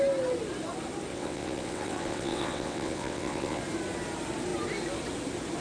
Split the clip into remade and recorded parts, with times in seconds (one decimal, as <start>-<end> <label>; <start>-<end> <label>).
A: 0.0-1.1 recorded; 1.1-3.6 remade; 3.6-5.6 recorded